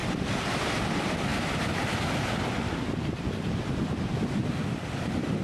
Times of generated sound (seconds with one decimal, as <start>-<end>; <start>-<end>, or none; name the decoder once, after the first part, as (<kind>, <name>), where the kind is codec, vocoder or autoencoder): none